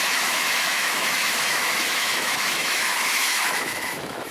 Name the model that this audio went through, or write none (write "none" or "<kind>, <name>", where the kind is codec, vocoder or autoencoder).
autoencoder, DAC-VAE